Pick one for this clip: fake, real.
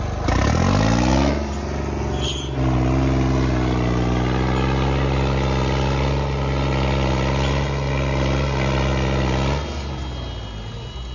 real